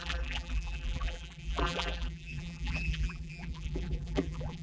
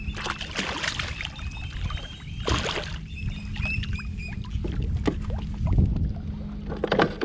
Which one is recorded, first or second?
second